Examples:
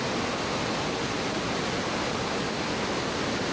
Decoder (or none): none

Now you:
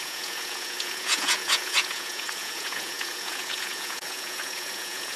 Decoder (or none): vocoder, Vocos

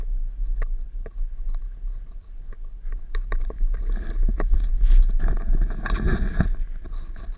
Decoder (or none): none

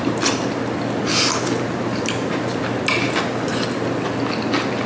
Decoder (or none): none